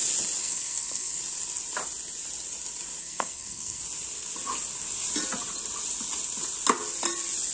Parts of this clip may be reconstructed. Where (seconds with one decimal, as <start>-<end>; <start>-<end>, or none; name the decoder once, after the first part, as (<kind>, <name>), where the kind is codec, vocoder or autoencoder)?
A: 0.4-1.2 (codec, SNAC); 3.0-3.8